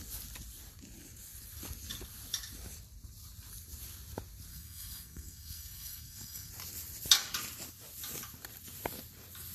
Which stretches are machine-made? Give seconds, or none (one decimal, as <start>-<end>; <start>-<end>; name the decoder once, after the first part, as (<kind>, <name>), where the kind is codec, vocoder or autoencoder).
4.5-6.5 (codec, SNAC)